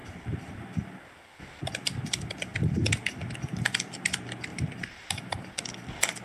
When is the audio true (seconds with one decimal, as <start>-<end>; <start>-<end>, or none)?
0.0-4.5; 5.5-6.2